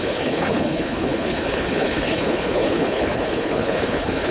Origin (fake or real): fake